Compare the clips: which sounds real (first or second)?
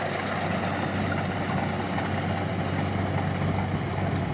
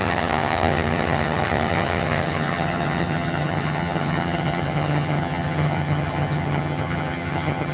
first